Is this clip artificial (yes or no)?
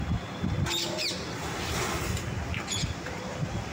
no